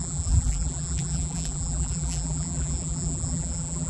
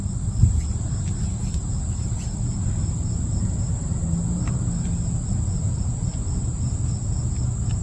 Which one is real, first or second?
second